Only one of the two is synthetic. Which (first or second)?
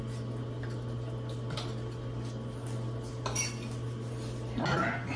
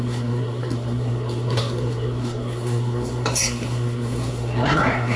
second